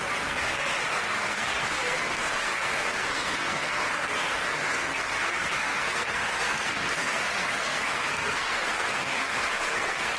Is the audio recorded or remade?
remade